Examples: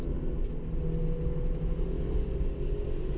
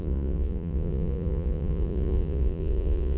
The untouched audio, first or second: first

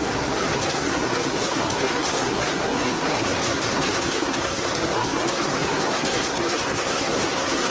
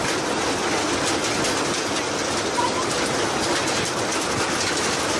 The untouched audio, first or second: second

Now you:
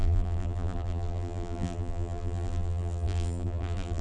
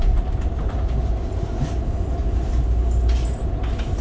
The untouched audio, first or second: second